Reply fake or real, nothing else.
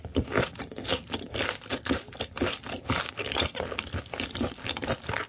real